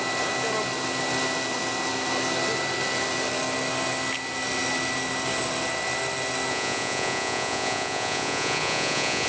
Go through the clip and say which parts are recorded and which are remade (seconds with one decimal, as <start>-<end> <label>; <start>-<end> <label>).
0.0-6.5 recorded; 6.5-9.3 remade